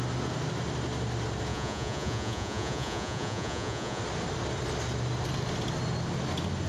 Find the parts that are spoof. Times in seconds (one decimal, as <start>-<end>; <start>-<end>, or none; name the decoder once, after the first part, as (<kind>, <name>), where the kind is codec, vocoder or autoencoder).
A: 1.5-4.0 (vocoder, Vocos)

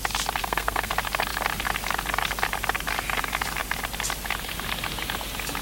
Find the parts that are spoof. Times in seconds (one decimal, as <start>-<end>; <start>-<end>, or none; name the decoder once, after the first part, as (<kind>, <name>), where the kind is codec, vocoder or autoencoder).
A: 0.4-0.9 (codec, SNAC)

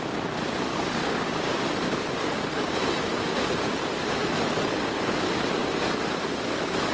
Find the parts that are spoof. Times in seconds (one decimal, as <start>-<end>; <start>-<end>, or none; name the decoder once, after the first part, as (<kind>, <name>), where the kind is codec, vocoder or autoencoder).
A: 0.7-1.7 (codec, DAC)

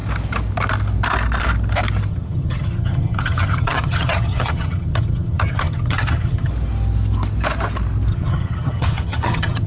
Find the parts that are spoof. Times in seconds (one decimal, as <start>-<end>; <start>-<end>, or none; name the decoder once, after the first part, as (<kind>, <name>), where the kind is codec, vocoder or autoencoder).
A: 2.1-6.5 (vocoder, HiFi-GAN); 8.1-9.7